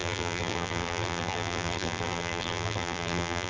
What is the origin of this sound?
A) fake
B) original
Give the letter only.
A